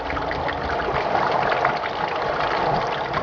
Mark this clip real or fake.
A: real